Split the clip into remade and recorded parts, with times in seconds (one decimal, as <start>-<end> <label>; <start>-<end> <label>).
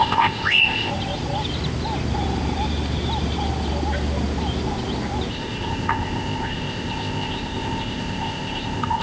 0.0-0.9 remade; 0.9-5.3 recorded; 5.3-9.0 remade